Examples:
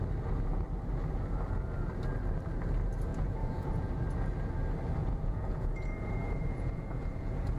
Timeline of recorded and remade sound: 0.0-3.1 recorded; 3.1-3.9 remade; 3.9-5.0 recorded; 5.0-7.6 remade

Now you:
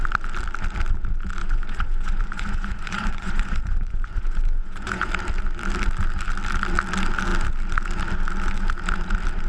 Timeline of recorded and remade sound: 0.0-1.4 recorded; 1.4-5.1 remade; 5.1-9.5 recorded